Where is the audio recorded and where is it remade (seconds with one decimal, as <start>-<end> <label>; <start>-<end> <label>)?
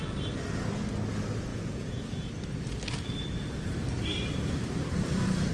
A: 0.0-1.5 recorded; 1.5-2.3 remade; 2.3-5.5 recorded